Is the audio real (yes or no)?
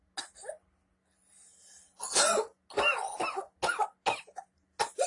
yes